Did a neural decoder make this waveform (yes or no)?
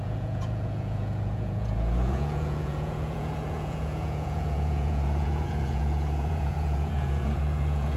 yes